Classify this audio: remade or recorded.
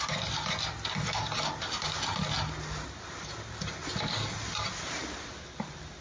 recorded